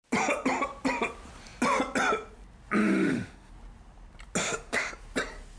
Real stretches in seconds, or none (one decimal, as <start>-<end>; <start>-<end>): 0.0-2.8; 3.5-4.4; 4.9-5.6